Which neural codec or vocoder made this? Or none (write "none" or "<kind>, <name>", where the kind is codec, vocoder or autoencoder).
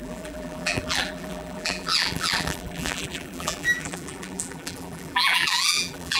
vocoder, BigVGAN v2